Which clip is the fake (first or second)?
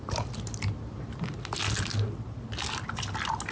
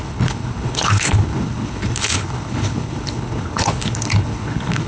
second